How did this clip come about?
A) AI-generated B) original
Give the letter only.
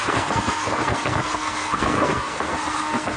A